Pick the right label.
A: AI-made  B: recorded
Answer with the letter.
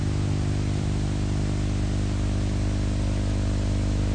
B